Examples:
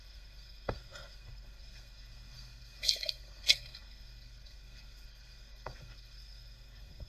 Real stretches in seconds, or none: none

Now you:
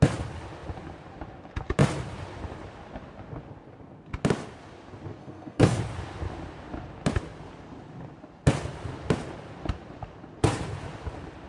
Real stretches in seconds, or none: 0.0-5.2; 5.8-11.5